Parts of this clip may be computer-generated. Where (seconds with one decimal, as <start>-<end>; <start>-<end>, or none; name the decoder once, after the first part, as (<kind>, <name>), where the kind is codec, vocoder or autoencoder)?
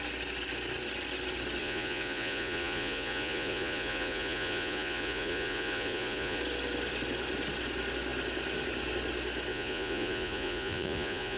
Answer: 1.6-6.4 (vocoder, Vocos); 9.5-11.4